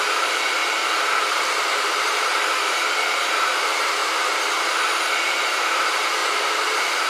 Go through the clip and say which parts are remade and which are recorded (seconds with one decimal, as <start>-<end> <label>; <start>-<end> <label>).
0.0-0.6 remade; 0.6-1.6 recorded; 1.6-2.3 remade; 2.3-2.9 recorded; 2.9-4.0 remade; 4.0-5.3 recorded; 5.3-7.1 remade